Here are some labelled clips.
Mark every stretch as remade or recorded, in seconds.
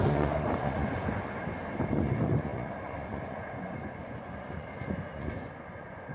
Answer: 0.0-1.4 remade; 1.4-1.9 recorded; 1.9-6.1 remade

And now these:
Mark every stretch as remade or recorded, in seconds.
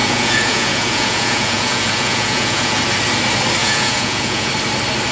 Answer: 0.0-2.8 remade; 2.8-3.6 recorded; 3.6-4.5 remade; 4.5-5.1 recorded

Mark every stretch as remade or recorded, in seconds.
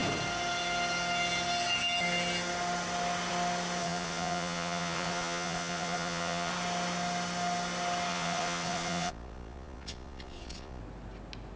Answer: 0.0-3.8 recorded; 3.8-6.5 remade; 6.5-8.1 recorded; 8.1-10.8 remade; 10.8-11.6 recorded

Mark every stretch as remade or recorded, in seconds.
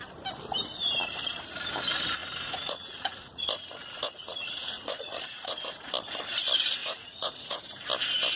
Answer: 0.0-2.2 recorded; 2.2-5.9 remade; 5.9-6.8 recorded; 6.8-7.6 remade; 7.6-8.4 recorded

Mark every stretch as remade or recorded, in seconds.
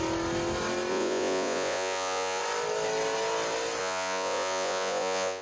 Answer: 0.0-0.9 recorded; 0.9-2.4 remade; 2.4-3.8 recorded; 3.8-5.4 remade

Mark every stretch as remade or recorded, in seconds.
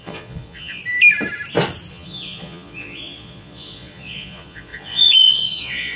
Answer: 0.0-0.8 remade; 0.8-1.9 recorded; 1.9-6.0 remade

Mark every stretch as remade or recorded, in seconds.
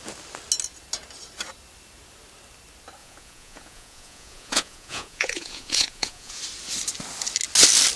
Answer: 0.0-3.0 recorded; 3.0-6.4 remade; 6.4-8.0 recorded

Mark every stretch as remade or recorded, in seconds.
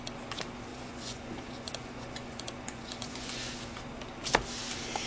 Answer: 0.0-0.7 recorded; 0.7-3.8 remade; 3.8-5.1 recorded